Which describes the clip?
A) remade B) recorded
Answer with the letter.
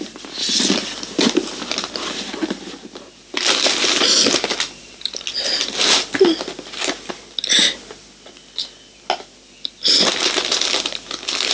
B